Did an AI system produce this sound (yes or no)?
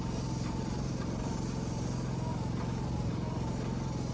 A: no